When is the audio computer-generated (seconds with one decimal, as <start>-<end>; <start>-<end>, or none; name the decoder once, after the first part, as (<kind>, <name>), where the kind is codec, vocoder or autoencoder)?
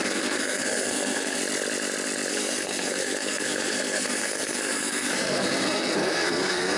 0.0-1.4 (codec, SNAC); 2.3-6.8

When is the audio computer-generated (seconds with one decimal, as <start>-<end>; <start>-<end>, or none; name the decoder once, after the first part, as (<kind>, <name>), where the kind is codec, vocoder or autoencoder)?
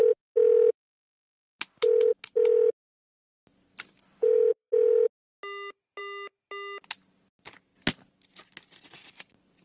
3.7-4.7 (vocoder, BigVGAN v2)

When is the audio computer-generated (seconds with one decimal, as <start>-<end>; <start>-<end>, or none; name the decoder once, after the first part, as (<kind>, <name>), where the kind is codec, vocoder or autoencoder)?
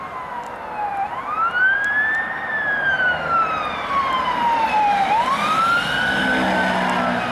0.9-5.3 (vocoder, BigVGAN v2)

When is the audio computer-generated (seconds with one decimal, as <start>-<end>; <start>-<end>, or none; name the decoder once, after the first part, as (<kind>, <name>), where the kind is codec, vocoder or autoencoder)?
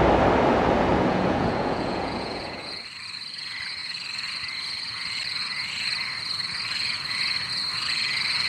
0.9-2.8 (vocoder, Vocos)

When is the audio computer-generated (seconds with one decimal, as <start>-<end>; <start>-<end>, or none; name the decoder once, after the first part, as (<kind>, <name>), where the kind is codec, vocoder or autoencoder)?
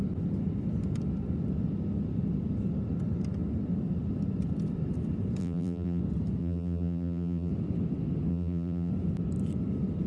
5.4-6.0 (vocoder, BigVGAN v2); 6.4-7.5; 8.3-8.9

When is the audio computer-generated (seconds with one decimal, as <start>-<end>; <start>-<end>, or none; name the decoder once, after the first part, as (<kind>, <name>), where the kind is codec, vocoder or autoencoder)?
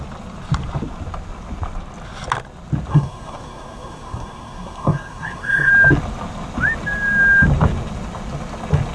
2.9-5.7 (codec, SNAC)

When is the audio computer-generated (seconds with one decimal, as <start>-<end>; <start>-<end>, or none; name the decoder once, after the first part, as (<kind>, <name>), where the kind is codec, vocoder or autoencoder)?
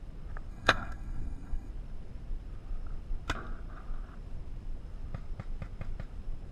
0.5-1.7 (codec, SNAC)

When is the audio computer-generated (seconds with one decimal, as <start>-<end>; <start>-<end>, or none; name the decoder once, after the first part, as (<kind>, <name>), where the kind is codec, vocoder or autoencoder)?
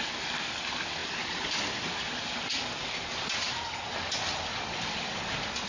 none